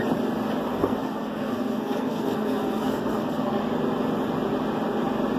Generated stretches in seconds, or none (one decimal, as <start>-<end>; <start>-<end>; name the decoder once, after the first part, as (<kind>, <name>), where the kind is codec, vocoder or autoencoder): 0.7-3.6 (codec, SNAC)

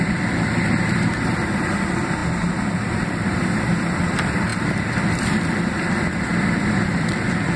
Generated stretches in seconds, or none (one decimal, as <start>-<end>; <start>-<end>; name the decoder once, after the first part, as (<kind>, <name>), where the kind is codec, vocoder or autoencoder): 0.0-2.2 (vocoder, BigVGAN v2); 2.7-7.6

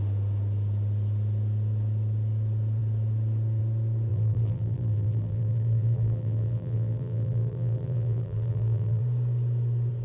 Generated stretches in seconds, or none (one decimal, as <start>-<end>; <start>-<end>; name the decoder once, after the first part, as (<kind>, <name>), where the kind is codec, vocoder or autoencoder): 4.1-9.0 (vocoder, BigVGAN v2)